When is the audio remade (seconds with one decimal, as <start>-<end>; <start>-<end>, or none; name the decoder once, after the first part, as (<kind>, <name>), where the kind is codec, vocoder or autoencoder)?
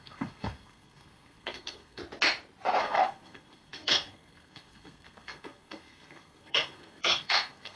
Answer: 0.0-2.0 (codec, SNAC); 2.8-7.8